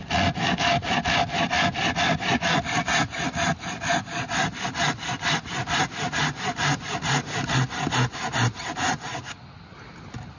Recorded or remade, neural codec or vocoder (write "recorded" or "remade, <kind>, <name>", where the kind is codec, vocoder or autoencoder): recorded